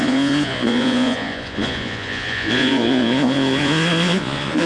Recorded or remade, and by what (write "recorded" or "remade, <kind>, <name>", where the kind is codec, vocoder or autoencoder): remade, vocoder, Vocos